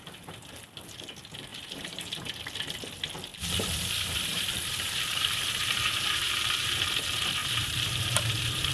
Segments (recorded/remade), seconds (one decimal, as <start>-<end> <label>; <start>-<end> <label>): 0.0-1.5 recorded; 1.5-2.3 remade; 2.3-3.3 recorded; 3.3-6.7 remade; 6.7-7.4 recorded; 7.4-8.7 remade